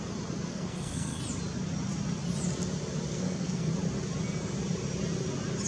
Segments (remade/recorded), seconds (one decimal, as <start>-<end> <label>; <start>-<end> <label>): 0.0-0.5 recorded; 0.5-1.2 remade; 1.2-3.1 recorded; 3.1-3.7 remade; 3.7-5.7 recorded